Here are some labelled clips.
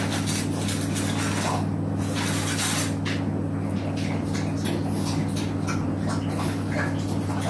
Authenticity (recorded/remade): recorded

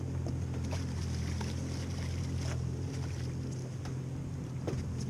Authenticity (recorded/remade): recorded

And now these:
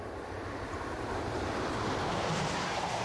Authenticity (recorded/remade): remade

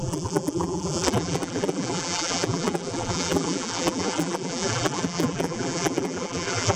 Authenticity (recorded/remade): remade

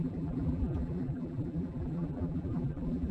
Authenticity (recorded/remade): remade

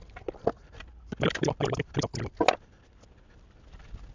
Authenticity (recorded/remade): recorded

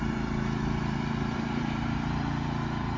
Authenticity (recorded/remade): remade